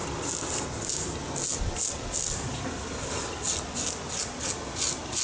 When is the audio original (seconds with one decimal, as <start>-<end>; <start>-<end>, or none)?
0.0-5.2